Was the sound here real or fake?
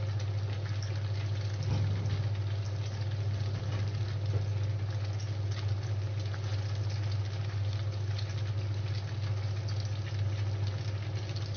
real